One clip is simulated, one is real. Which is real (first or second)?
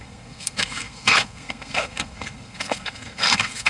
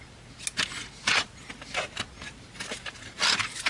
second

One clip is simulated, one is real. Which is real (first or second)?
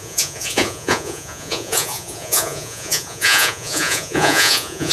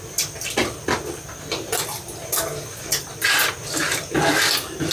second